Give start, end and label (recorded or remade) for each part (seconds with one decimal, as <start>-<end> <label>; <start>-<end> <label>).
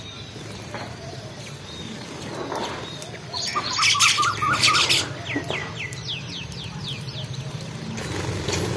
0.0-5.6 recorded; 5.6-7.7 remade; 7.7-8.8 recorded